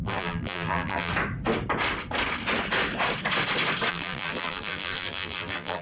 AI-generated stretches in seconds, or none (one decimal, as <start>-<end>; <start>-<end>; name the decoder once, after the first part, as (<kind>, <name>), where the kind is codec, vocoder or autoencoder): 0.0-1.1 (vocoder, BigVGAN v2); 3.9-5.8